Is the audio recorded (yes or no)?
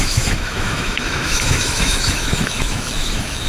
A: no